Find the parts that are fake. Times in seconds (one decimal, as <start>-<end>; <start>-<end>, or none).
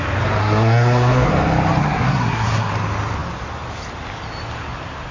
0.4-1.3; 1.8-2.7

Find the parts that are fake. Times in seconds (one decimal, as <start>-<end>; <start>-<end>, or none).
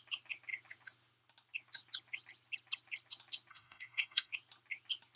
3.5-4.3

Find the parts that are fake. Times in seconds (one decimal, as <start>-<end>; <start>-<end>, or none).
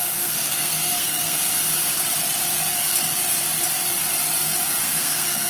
0.0-1.5; 4.8-5.5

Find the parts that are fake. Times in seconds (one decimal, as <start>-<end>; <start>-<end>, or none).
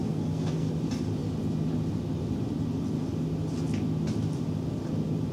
0.0-0.7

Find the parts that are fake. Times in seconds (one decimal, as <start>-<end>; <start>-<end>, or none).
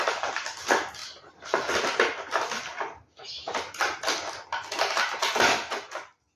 none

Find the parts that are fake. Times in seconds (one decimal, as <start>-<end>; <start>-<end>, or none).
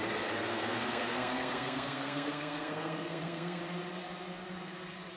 0.5-3.6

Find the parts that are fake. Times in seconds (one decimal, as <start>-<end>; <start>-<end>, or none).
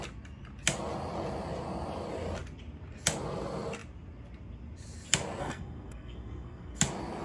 5.4-6.8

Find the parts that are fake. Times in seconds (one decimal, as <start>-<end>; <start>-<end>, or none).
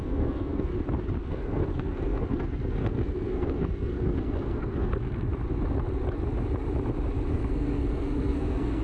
0.0-0.7; 1.2-5.3; 7.3-8.8